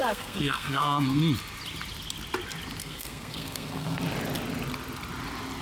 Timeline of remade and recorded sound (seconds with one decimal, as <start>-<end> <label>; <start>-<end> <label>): 0.0-1.2 remade; 1.2-2.8 recorded; 2.8-4.0 remade; 4.0-5.6 recorded